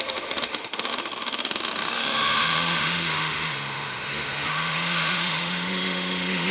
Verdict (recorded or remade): remade